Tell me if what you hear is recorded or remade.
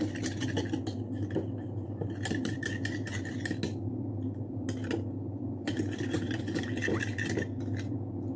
recorded